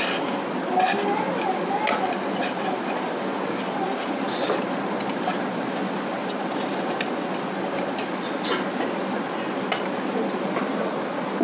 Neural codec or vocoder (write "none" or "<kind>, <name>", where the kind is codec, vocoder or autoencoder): none